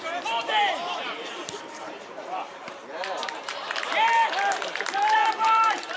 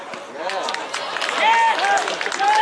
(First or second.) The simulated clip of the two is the first